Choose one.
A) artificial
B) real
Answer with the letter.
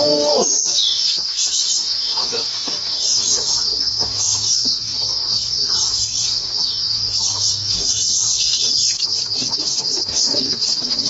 A